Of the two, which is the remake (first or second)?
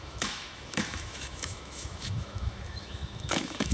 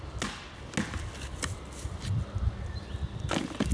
first